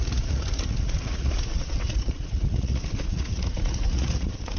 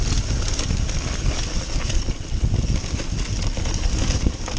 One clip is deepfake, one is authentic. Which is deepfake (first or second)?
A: first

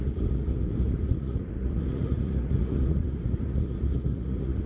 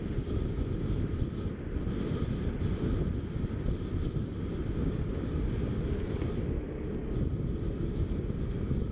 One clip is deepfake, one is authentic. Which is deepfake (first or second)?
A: first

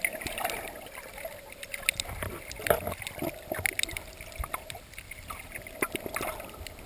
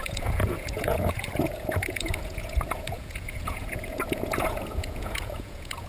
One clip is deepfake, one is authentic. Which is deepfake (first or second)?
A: second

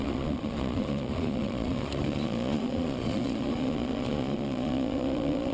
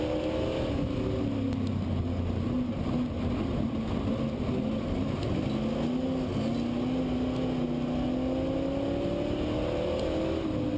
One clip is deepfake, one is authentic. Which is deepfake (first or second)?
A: first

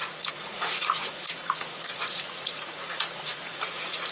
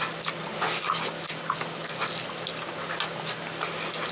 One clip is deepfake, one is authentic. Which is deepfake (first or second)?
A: first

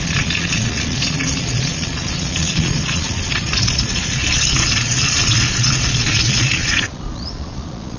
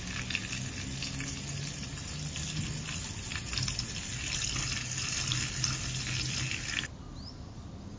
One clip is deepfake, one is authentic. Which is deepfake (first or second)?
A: first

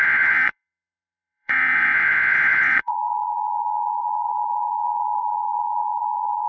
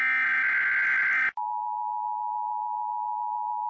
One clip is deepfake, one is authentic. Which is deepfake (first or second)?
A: first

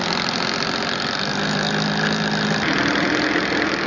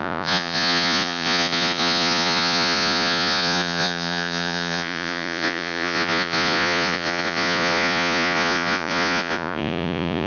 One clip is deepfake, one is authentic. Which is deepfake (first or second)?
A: second